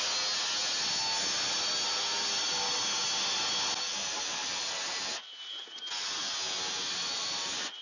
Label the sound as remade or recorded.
recorded